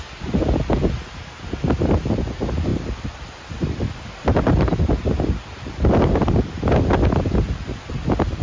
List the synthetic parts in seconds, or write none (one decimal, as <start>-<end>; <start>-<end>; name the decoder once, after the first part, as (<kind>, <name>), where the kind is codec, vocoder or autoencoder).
none